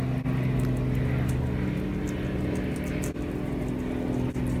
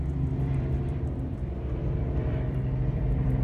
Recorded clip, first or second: first